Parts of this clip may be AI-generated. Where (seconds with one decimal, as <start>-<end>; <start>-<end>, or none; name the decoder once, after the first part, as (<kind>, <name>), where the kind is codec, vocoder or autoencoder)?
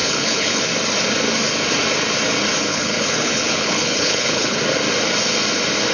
0.0-0.6 (codec, HILCodec); 2.7-4.6